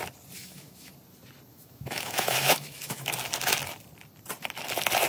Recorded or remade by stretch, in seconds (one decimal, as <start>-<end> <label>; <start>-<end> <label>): 0.0-0.4 recorded; 0.4-0.9 remade; 0.9-1.5 recorded; 1.5-3.1 remade; 3.1-5.1 recorded